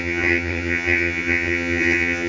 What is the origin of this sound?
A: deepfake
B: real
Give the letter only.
A